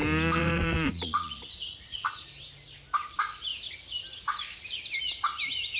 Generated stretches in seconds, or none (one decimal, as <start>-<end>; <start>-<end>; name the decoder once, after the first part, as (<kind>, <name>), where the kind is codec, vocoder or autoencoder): 0.4-2.1 (vocoder, Vocos)